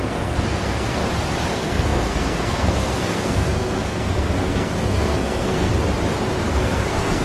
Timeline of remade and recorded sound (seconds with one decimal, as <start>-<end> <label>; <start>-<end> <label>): 0.0-1.0 remade; 1.0-1.5 recorded; 1.5-5.7 remade; 5.7-6.5 recorded; 6.5-7.2 remade